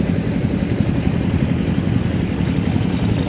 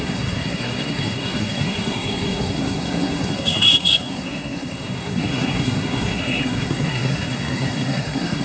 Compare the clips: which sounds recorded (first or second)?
first